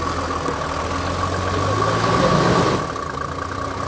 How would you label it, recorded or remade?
recorded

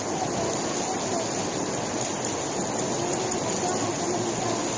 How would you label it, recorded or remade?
recorded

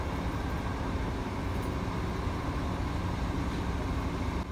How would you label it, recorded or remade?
recorded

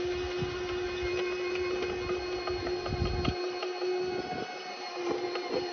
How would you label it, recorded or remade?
recorded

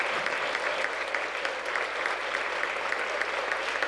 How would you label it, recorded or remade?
recorded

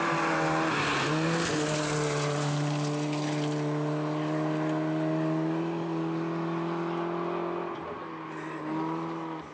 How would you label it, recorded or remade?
recorded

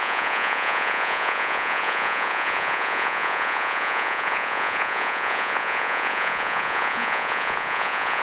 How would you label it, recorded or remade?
remade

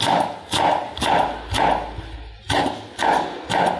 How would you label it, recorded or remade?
recorded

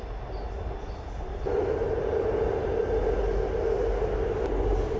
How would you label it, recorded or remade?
recorded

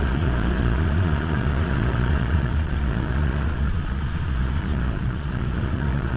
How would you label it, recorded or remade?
remade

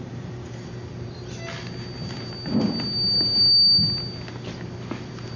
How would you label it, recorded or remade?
recorded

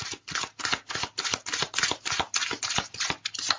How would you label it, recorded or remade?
recorded